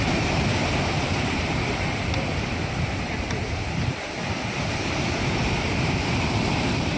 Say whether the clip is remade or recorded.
remade